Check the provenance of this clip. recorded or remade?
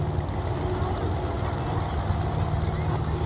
recorded